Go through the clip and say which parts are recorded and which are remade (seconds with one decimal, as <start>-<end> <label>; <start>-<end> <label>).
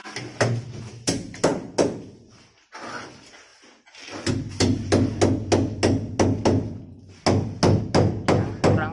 0.0-8.9 recorded